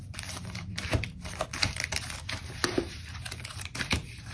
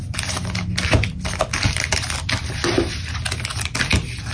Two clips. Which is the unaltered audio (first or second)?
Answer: second